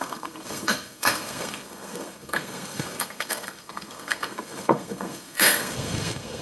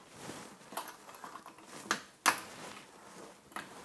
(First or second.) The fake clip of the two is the first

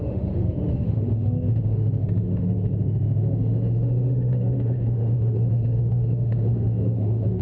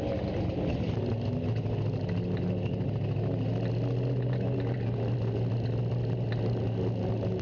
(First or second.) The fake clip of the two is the first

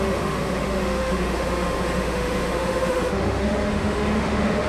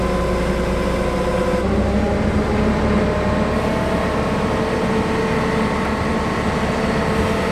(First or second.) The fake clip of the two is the first